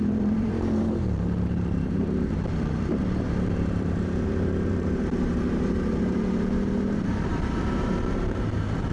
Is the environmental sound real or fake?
fake